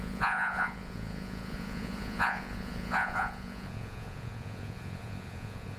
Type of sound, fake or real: fake